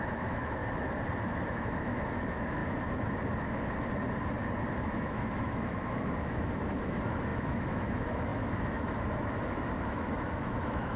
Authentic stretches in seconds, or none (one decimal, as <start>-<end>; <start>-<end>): 0.6-1.5; 2.6-4.8